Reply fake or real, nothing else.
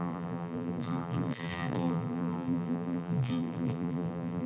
fake